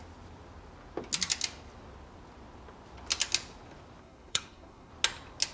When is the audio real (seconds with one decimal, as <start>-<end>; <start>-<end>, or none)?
0.0-4.0; 4.9-5.5